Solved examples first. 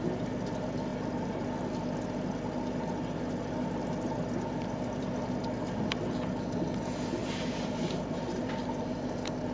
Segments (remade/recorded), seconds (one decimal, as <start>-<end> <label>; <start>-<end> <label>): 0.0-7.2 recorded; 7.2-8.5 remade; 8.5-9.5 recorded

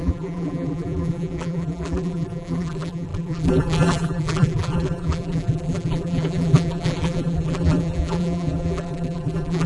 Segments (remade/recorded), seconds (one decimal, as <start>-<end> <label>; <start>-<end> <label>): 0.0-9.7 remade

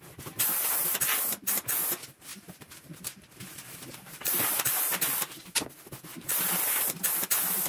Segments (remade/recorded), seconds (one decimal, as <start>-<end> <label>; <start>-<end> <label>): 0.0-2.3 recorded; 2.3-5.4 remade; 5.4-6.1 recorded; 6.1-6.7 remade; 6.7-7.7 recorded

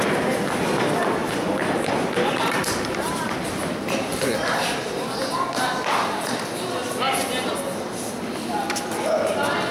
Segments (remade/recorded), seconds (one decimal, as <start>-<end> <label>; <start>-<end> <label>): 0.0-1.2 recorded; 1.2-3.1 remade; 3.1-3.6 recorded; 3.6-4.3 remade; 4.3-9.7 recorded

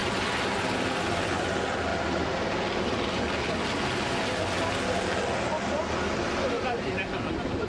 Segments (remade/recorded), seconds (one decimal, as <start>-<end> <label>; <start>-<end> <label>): 0.0-7.7 recorded

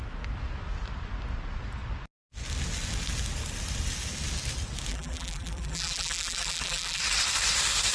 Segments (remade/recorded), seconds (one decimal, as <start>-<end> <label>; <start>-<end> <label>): 0.0-4.9 recorded; 4.9-7.0 remade; 7.0-7.9 recorded

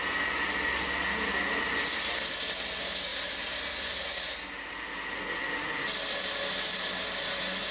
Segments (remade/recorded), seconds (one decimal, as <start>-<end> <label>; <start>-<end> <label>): 0.0-7.7 recorded

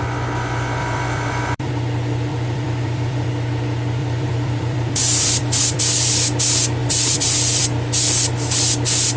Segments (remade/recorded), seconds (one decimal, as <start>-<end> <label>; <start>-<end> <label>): 0.0-0.8 recorded; 0.8-1.7 remade; 1.7-2.3 recorded; 2.3-3.3 remade; 3.3-4.0 recorded; 4.0-5.8 remade; 5.8-6.8 recorded; 6.8-7.6 remade; 7.6-9.2 recorded